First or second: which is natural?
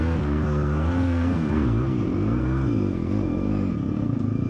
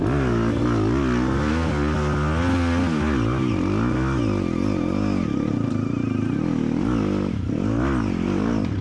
second